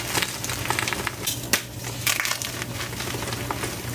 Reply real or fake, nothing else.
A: real